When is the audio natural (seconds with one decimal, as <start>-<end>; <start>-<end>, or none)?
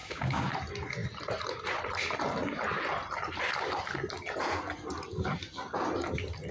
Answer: 0.5-6.5